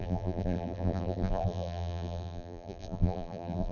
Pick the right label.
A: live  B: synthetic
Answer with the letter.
B